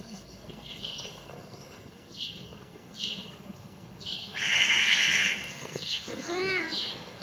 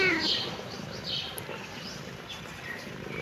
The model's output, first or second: first